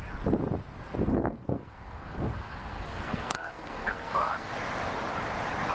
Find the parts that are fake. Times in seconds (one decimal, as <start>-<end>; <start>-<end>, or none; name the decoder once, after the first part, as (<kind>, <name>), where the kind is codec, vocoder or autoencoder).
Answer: 1.1-4.5 (codec, SNAC)